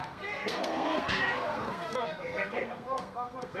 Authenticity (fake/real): fake